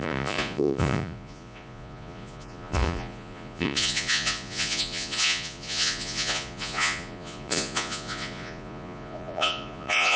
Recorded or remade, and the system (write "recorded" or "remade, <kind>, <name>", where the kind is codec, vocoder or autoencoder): remade, vocoder, Vocos